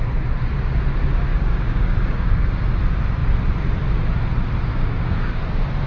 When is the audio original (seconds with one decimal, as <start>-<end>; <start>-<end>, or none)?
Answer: 0.0-1.3; 2.8-4.7; 5.4-5.9